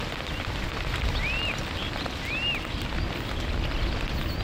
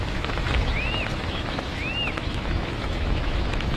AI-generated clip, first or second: second